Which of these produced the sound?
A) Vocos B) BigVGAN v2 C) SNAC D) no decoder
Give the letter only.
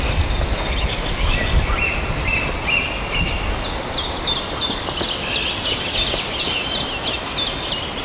D